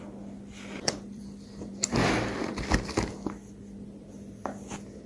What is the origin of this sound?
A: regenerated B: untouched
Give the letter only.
A